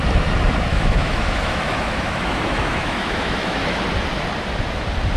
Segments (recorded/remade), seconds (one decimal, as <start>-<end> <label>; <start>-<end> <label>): 0.0-0.7 recorded; 0.7-3.8 remade; 3.8-5.2 recorded